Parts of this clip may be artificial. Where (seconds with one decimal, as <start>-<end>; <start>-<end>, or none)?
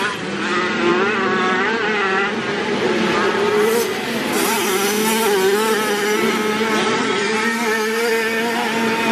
none